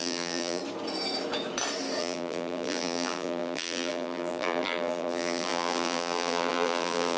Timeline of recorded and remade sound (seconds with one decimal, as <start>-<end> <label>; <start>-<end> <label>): 0.0-0.6 remade; 0.6-2.0 recorded; 2.0-7.2 remade